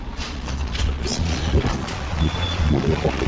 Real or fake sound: fake